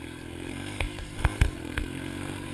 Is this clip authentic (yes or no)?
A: no